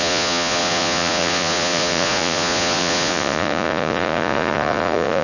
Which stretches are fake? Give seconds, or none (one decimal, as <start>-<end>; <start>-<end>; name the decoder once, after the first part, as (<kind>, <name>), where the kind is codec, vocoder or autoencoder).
0.0-5.2 (vocoder, Vocos)